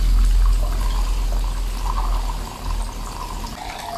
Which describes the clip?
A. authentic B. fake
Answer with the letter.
A